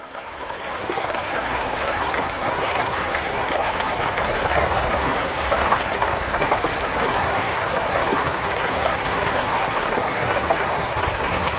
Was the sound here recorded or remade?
remade